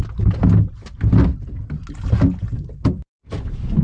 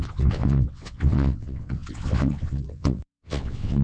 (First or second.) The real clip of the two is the first